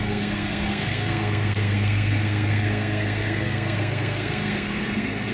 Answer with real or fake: fake